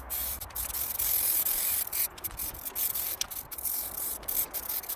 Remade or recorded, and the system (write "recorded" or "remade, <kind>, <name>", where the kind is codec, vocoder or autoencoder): remade, vocoder, BigVGAN v2